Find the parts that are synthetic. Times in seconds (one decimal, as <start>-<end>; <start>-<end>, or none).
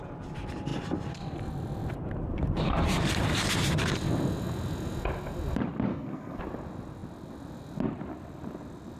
5.9-6.4